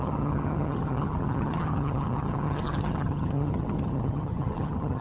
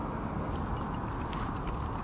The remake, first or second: first